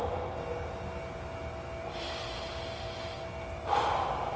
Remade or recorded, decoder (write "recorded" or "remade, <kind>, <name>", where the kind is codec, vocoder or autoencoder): recorded